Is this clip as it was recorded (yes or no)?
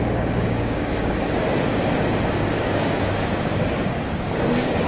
no